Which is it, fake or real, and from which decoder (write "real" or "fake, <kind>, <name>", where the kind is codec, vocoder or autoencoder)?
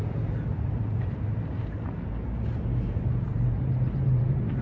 fake, vocoder, BigVGAN v2